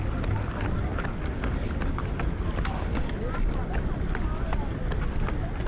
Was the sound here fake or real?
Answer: real